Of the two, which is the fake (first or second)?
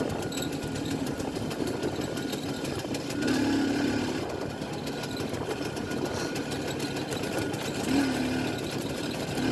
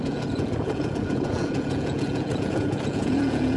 second